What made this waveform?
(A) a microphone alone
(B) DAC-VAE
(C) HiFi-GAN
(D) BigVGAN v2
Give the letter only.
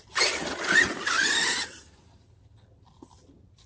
A